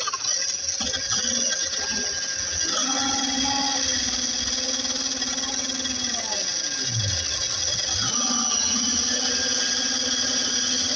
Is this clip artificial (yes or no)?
no